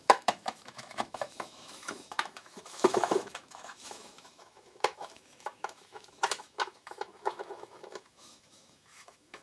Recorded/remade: remade